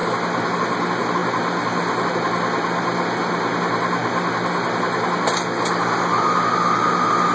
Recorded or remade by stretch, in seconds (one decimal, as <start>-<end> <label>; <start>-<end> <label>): 0.0-7.3 recorded

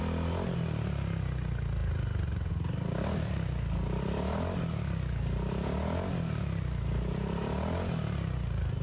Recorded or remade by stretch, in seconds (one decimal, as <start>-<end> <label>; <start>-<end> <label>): 0.0-8.8 recorded

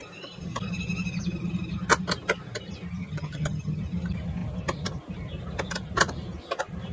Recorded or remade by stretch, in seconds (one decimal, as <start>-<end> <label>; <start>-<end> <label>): 0.0-3.0 recorded; 3.0-3.8 remade; 3.8-6.9 recorded

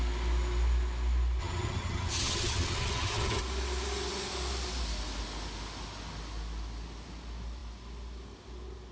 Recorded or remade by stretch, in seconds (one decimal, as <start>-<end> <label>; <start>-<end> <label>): 0.0-1.4 recorded; 1.4-3.4 remade; 3.4-8.9 recorded

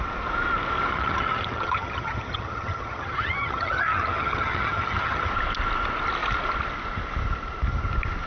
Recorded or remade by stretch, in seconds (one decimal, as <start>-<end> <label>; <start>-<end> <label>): 0.0-0.9 recorded; 0.9-5.3 remade; 5.3-8.3 recorded

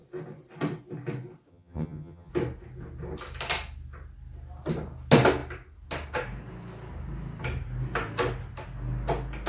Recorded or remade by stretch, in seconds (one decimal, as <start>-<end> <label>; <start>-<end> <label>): 0.0-1.5 recorded; 1.5-2.3 remade; 2.3-9.5 recorded